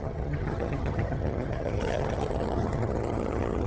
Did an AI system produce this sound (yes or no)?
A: yes